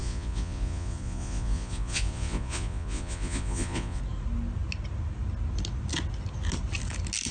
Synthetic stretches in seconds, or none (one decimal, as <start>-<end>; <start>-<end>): 0.0-4.0